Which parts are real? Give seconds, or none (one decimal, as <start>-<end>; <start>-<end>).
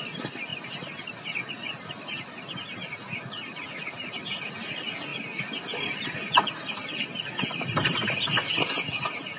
0.0-9.4